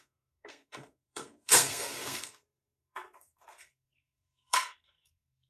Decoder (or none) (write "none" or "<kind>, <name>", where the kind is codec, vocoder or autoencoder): codec, SNAC